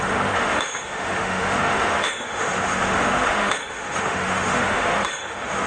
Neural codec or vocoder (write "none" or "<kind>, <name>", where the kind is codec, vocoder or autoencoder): autoencoder, DAC-VAE